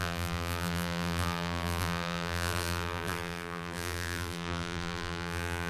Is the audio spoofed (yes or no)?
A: yes